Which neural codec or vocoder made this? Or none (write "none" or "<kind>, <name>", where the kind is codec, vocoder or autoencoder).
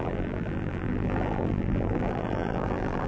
vocoder, BigVGAN v2